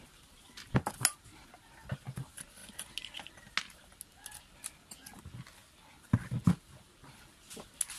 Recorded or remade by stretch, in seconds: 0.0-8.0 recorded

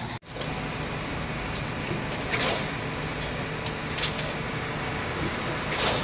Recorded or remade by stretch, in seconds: 0.0-4.5 recorded; 4.5-5.4 remade; 5.4-6.0 recorded